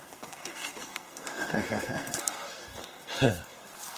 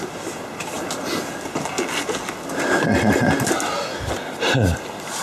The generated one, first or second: first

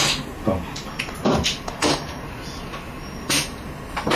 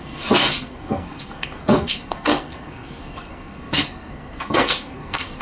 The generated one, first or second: second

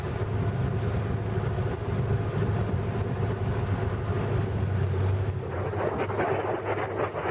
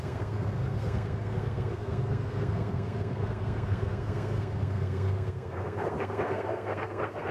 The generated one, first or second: second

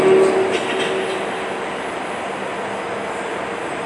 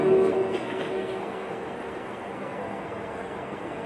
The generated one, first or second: second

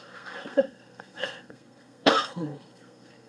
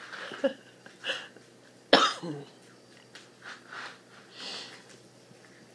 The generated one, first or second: first